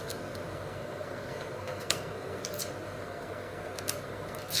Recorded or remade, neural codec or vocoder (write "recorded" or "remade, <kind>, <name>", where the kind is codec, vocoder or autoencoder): remade, codec, SNAC